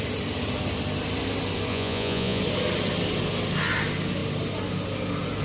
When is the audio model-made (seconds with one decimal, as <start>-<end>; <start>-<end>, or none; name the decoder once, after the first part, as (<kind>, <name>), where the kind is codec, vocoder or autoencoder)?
1.7-2.4 (vocoder, Vocos)